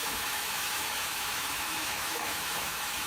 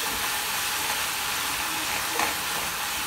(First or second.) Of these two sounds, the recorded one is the second